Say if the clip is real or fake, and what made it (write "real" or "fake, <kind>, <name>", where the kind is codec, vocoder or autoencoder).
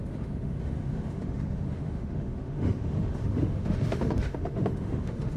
fake, autoencoder, DAC-VAE